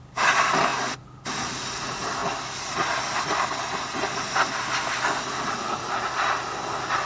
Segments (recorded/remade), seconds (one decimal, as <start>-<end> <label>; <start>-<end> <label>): 0.0-7.1 recorded

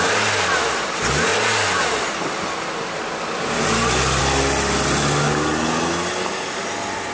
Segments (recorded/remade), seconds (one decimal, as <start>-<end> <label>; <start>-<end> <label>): 0.0-7.1 recorded

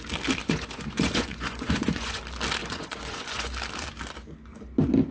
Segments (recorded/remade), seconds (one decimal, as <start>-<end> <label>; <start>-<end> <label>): 0.0-0.4 recorded; 0.4-2.2 remade; 2.2-2.6 recorded; 2.6-3.5 remade; 3.5-5.1 recorded